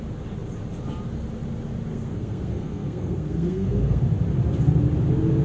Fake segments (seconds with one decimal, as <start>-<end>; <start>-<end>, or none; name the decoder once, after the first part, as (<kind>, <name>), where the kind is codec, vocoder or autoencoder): 1.9-4.0 (codec, SNAC)